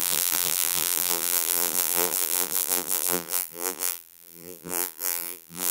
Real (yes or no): no